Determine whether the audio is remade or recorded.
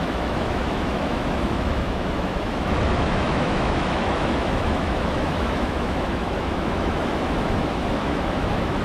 remade